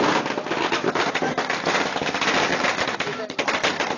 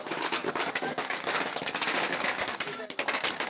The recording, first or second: first